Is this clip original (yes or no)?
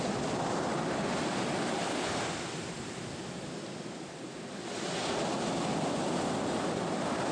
yes